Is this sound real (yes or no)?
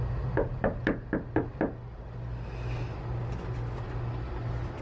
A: yes